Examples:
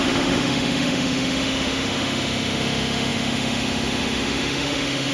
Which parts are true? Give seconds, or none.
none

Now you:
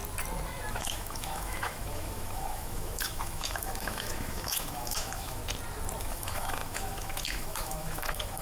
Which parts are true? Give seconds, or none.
0.0-0.7; 5.4-6.0

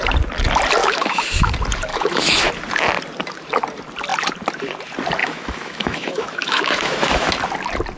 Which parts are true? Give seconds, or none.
0.0-0.8; 1.5-1.9; 2.5-5.2; 7.3-8.0

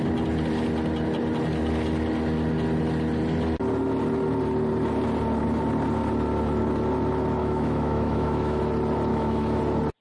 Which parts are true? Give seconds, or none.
0.0-7.4; 8.6-9.1; 9.6-10.0

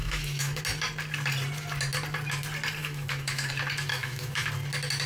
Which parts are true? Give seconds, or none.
0.6-2.8; 3.5-3.9; 4.5-5.1